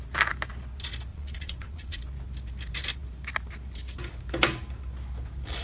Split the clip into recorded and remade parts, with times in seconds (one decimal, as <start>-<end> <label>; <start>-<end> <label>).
0.0-1.1 recorded; 1.1-2.0 remade; 2.0-5.6 recorded